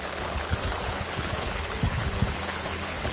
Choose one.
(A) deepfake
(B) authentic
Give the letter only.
A